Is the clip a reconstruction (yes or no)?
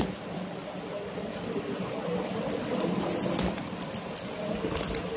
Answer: no